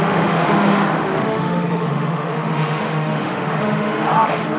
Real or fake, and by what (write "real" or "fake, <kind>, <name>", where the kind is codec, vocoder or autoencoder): fake, autoencoder, DAC-VAE